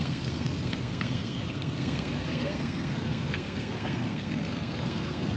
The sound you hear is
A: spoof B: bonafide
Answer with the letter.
A